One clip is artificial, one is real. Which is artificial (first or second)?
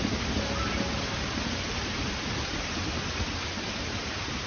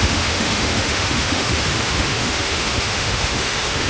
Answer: second